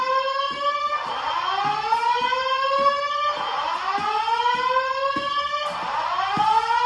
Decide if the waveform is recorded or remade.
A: recorded